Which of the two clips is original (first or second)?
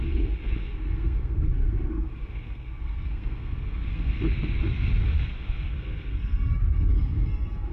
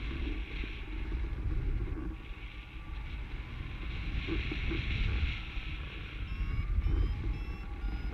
second